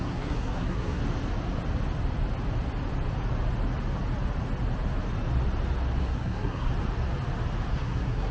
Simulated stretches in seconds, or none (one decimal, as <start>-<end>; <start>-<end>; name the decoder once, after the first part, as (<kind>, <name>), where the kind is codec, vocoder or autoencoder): 0.0-1.0 (codec, SNAC); 6.0-6.7; 7.7-8.3